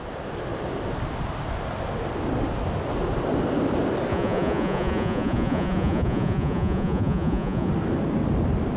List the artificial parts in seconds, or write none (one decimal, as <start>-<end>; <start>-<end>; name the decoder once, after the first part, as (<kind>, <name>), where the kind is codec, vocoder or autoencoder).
4.1-7.7 (vocoder, Vocos)